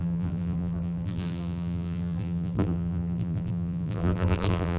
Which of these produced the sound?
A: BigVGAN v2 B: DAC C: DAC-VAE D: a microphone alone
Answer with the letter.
A